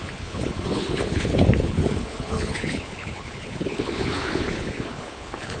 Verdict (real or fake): fake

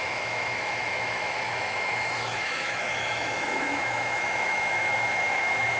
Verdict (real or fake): fake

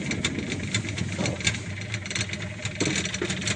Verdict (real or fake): real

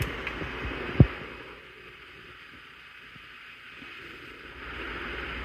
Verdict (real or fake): real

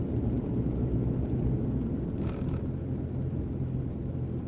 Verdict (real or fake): real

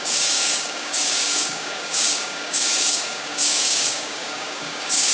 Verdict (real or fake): fake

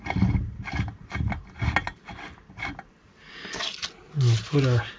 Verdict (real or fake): real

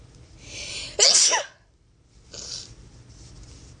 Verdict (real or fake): real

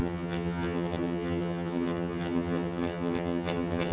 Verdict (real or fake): fake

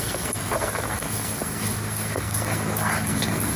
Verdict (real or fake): fake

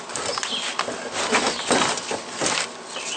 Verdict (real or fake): real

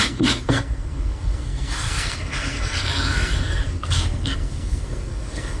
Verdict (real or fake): fake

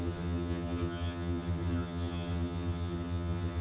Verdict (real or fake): fake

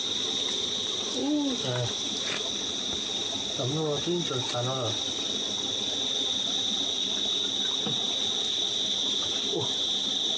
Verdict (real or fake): real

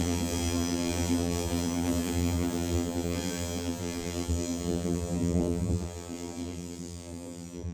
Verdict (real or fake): fake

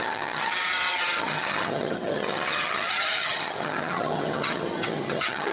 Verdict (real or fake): fake